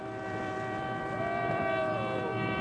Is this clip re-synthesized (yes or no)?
yes